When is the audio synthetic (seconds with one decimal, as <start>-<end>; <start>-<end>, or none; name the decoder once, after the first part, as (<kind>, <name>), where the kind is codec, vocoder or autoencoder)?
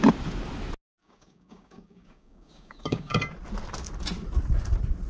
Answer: 1.0-3.2 (codec, DAC)